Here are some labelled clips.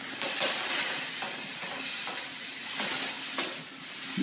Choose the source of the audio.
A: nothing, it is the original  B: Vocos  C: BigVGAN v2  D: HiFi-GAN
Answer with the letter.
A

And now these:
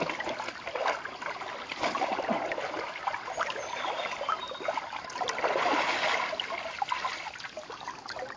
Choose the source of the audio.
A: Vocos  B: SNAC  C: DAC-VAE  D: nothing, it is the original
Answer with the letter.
D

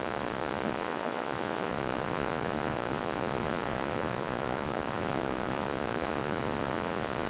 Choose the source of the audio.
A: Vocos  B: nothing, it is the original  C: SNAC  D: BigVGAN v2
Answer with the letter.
A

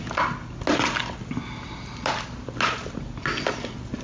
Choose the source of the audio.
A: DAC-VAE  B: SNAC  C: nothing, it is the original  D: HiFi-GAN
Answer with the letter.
C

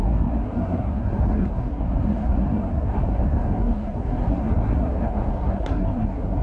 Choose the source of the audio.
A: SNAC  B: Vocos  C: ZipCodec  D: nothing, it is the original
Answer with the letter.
A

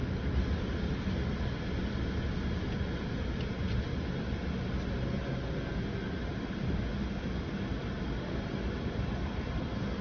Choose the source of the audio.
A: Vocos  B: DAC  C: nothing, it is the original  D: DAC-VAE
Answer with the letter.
C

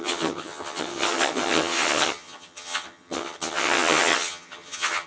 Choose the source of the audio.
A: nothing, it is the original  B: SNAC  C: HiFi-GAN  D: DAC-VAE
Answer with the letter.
C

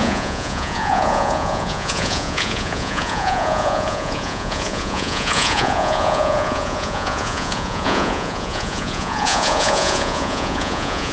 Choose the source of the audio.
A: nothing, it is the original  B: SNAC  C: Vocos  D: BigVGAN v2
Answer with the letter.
C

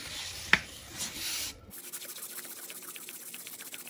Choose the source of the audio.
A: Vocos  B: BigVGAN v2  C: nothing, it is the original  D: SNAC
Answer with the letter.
B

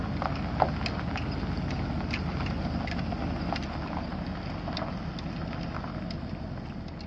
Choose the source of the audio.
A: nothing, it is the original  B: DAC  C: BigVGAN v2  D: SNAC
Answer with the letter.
A